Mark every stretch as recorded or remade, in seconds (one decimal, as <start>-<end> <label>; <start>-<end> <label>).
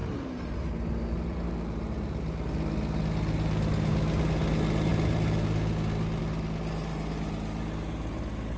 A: 0.0-8.6 recorded